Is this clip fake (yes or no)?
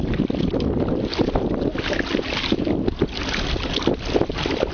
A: no